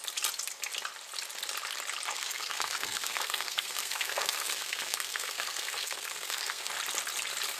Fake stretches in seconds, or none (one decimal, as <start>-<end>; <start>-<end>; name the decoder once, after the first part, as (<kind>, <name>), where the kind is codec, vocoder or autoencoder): 2.1-6.7 (codec, SNAC)